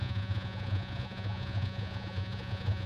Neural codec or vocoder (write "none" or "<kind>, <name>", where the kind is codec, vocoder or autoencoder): vocoder, Vocos